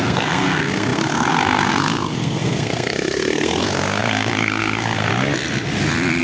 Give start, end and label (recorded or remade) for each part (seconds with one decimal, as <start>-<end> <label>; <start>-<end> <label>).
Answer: 0.0-5.1 remade; 5.1-6.2 recorded